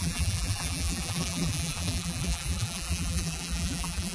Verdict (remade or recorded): remade